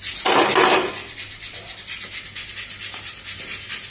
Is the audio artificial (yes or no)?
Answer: no